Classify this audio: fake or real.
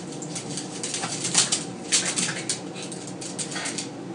real